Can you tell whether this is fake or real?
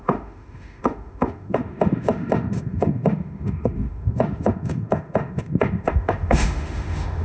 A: fake